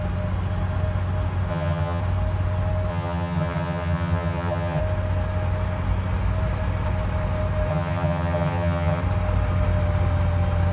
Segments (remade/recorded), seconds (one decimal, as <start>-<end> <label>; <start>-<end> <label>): 0.0-1.5 recorded; 1.5-2.0 remade; 2.0-2.9 recorded; 2.9-4.8 remade; 4.8-7.7 recorded; 7.7-9.0 remade; 9.0-10.7 recorded